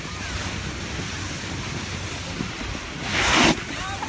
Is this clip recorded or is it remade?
recorded